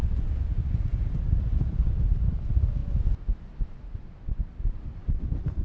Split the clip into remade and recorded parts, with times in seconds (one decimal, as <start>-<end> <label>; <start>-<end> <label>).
0.0-5.6 recorded